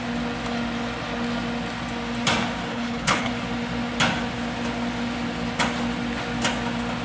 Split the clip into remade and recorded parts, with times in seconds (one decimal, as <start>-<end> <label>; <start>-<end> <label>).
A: 0.0-2.7 recorded; 2.7-3.3 remade; 3.3-7.0 recorded